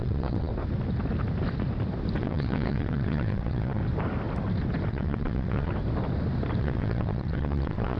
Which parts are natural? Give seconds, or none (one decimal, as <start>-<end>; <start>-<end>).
0.5-2.2; 3.8-4.9; 5.7-6.6